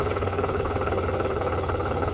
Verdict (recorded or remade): remade